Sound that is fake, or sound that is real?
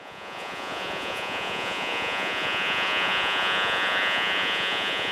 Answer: fake